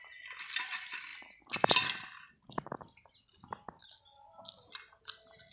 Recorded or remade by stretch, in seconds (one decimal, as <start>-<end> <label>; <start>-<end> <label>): 0.0-5.5 recorded